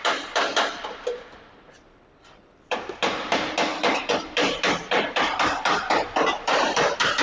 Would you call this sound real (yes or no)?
no